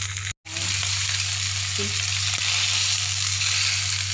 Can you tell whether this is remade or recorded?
recorded